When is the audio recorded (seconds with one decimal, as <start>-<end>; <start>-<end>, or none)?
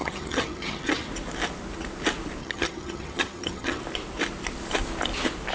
1.1-2.4; 3.8-5.5